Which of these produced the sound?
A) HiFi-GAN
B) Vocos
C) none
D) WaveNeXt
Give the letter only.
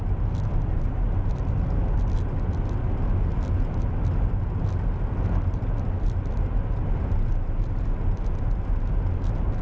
C